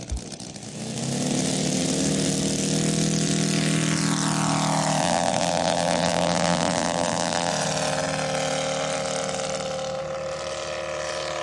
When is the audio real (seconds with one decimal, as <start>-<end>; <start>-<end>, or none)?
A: 0.0-5.0; 7.5-11.4